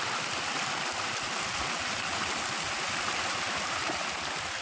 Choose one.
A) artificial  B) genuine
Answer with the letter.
B